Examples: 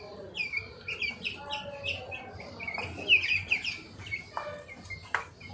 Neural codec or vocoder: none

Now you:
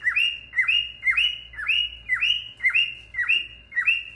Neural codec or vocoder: none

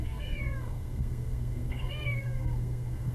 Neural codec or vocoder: codec, SNAC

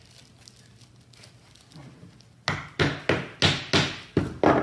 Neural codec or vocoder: none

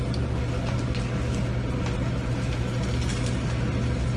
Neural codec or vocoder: none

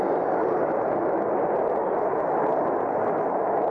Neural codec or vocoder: none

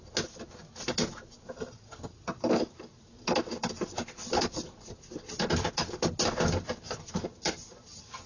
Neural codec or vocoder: none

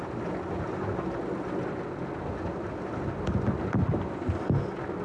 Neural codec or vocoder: none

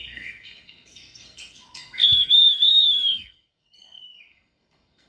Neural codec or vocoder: codec, SNAC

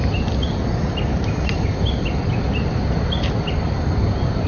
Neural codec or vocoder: none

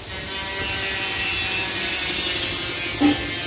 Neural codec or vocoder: none